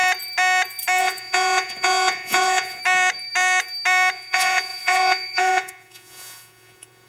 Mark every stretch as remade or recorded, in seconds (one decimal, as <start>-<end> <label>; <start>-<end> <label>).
0.0-1.0 recorded; 1.0-2.8 remade; 2.8-4.1 recorded; 4.1-7.1 remade